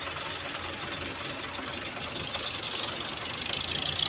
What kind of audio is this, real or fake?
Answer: real